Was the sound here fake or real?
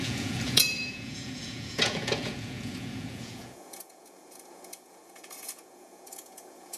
fake